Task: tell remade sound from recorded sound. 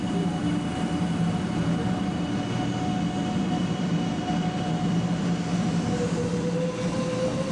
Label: recorded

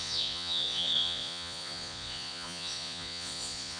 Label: remade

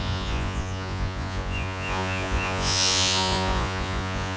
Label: remade